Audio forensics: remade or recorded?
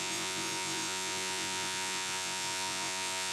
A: remade